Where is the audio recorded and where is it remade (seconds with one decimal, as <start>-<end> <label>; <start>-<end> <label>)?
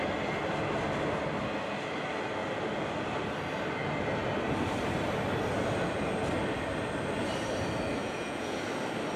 0.0-8.0 recorded; 8.0-8.6 remade; 8.6-9.2 recorded